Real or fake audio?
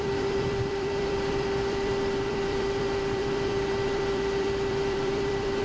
fake